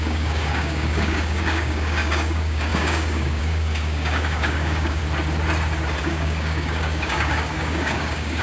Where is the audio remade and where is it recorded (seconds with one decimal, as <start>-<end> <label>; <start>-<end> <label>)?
0.0-5.0 remade; 5.0-6.0 recorded; 6.0-8.4 remade